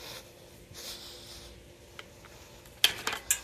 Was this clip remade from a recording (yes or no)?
no